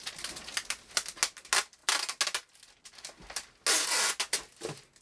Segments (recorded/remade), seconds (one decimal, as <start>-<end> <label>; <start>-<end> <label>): 0.0-5.0 recorded